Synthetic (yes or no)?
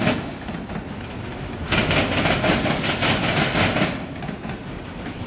no